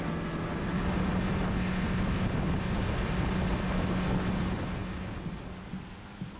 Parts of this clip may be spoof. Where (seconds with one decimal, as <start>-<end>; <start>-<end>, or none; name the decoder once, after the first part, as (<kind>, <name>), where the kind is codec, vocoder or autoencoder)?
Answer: none